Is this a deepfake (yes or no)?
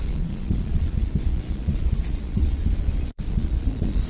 yes